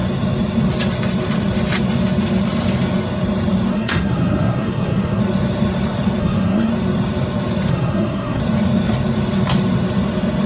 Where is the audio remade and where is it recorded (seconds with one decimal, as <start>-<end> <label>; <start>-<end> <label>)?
0.0-3.7 recorded; 3.7-5.2 remade; 5.2-6.2 recorded; 6.2-6.7 remade; 6.7-7.7 recorded; 7.7-8.4 remade; 8.4-10.5 recorded